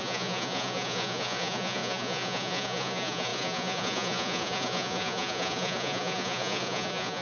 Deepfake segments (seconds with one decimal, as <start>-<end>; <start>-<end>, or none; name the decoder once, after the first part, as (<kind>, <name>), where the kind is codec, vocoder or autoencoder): 0.0-7.2 (vocoder, Vocos)